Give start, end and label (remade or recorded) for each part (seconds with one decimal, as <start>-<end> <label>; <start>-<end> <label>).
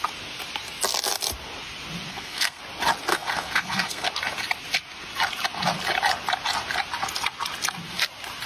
0.0-2.1 recorded; 2.1-2.6 remade; 2.6-3.1 recorded; 3.1-4.1 remade; 4.1-8.5 recorded